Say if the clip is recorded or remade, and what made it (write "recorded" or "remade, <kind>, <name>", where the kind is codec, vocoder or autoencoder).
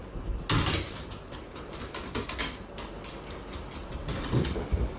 recorded